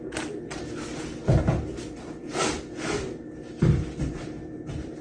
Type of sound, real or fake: real